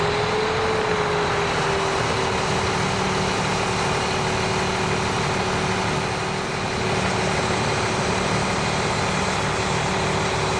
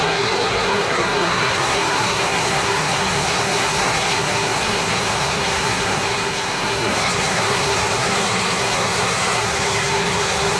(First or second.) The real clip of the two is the first